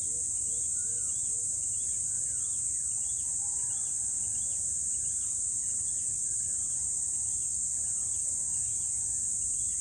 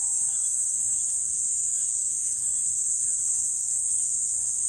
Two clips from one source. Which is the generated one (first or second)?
second